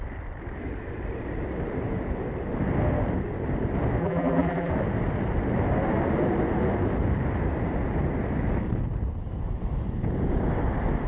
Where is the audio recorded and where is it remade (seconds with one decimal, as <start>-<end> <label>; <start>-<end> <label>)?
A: 0.0-4.0 recorded; 4.0-4.7 remade; 4.7-11.1 recorded